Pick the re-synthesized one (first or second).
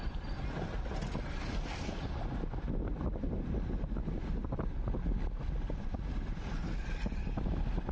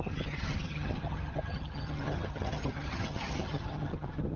second